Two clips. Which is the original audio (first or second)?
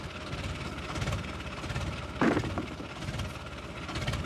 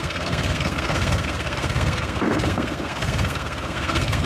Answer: first